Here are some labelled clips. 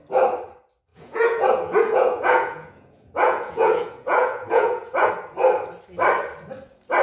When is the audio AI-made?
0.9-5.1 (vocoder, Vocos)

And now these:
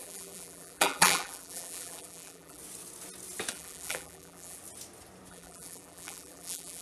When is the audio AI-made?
0.0-2.6 (vocoder, BigVGAN v2); 3.5-4.6; 5.3-6.8

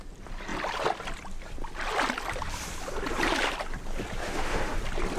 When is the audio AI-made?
4.2-4.8 (autoencoder, DAC-VAE)

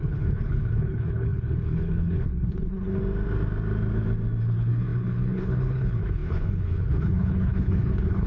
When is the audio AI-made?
0.0-3.0 (codec, HILCodec); 4.4-8.3